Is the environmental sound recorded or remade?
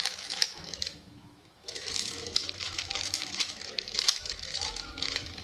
remade